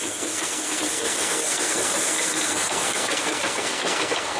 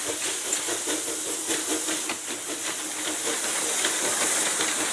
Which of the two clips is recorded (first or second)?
second